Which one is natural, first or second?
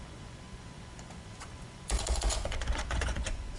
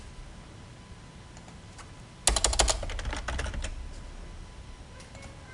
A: second